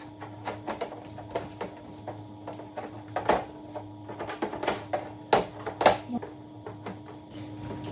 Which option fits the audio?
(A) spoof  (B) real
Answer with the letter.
B